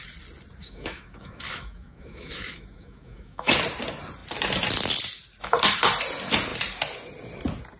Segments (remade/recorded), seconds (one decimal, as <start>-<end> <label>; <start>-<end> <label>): 0.0-0.6 recorded; 0.6-3.5 remade; 3.5-7.8 recorded